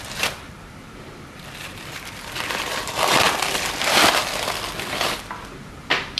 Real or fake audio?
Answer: fake